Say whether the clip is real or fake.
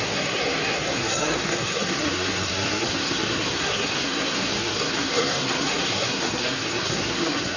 fake